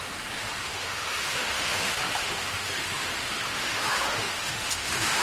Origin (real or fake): fake